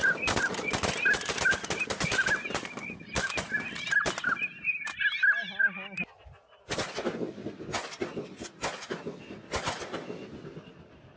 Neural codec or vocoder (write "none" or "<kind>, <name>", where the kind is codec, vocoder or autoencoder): none